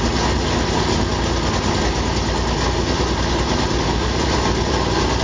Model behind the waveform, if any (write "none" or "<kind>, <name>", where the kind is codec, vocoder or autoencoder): none